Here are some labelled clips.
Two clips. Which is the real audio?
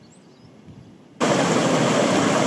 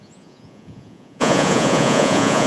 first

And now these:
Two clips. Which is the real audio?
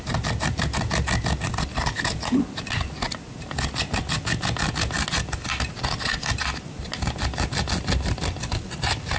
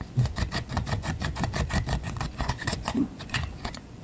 first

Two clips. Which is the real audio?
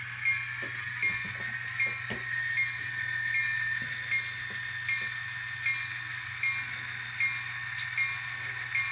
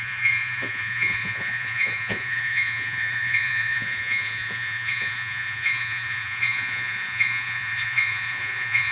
first